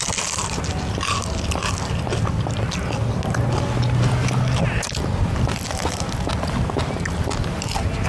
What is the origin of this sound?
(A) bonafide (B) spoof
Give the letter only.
A